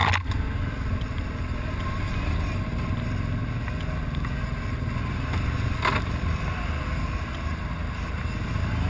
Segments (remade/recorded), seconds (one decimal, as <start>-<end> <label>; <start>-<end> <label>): 0.0-8.9 recorded